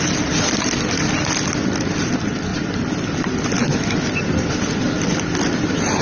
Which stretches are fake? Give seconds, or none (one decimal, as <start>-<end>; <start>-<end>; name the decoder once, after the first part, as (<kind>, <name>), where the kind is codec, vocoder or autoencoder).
none